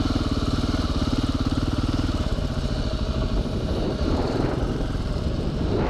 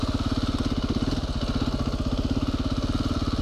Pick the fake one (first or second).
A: first